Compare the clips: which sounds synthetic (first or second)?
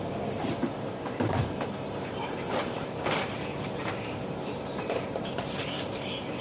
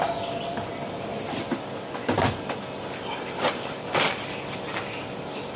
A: first